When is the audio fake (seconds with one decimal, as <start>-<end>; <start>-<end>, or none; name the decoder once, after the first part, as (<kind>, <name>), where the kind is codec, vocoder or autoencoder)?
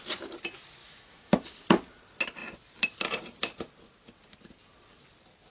0.8-1.5 (autoencoder, DAC-VAE)